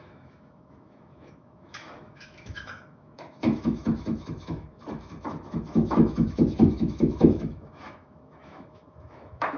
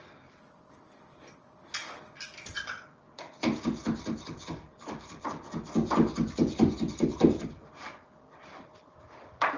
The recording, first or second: second